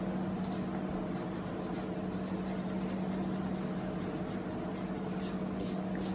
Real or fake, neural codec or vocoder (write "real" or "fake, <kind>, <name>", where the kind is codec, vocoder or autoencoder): real